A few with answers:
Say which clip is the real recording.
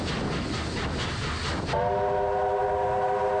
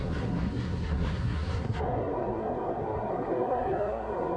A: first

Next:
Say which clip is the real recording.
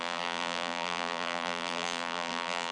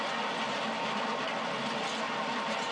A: second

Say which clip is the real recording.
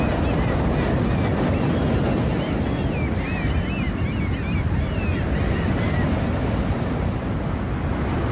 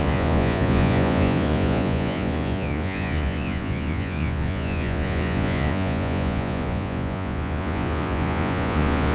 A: first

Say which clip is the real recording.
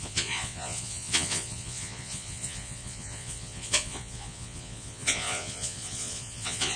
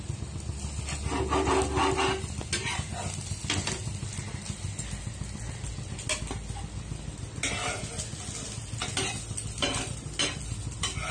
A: second